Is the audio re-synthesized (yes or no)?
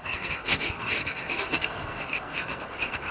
yes